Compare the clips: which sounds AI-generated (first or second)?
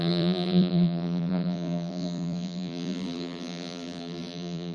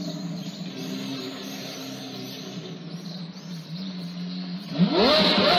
first